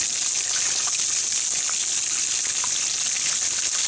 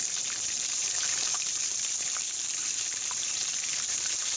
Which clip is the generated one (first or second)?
second